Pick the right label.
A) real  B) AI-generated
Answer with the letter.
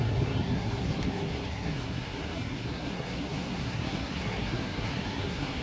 B